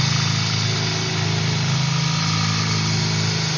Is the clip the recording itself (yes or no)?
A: yes